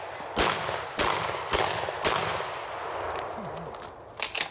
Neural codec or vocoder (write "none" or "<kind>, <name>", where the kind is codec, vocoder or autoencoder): none